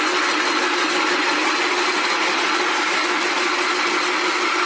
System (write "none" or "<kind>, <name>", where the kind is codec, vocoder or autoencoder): none